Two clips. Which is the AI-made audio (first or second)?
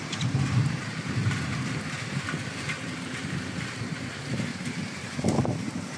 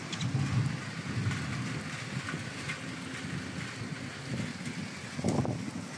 first